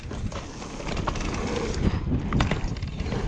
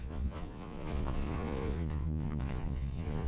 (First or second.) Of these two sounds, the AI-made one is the second